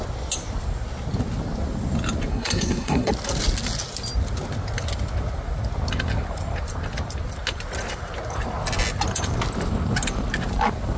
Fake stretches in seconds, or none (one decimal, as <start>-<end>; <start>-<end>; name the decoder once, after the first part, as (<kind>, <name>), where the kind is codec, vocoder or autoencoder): 2.3-3.1 (codec, SNAC)